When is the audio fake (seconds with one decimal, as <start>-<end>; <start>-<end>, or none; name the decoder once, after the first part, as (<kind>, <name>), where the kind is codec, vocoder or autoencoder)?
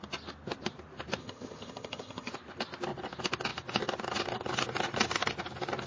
1.2-2.3 (vocoder, HiFi-GAN)